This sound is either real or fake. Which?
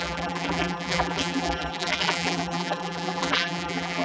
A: fake